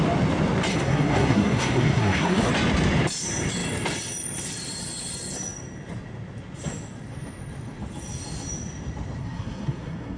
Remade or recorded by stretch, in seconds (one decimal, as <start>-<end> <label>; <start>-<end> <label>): 0.0-0.7 recorded; 0.7-2.5 remade; 2.5-9.2 recorded; 9.2-10.2 remade